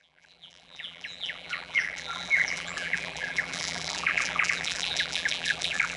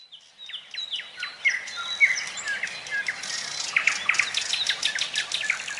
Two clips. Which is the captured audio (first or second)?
second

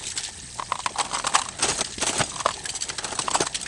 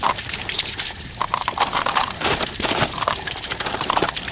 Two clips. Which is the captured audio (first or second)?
first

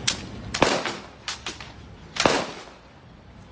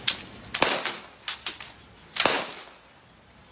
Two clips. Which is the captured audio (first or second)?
second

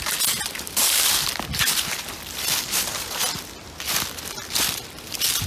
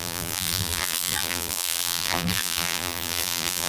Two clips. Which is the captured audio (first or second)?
first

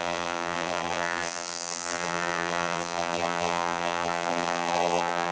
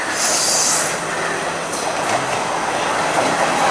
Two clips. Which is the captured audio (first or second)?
second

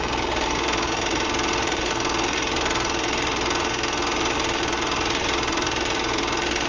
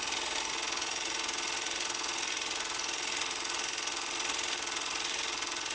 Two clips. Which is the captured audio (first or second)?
second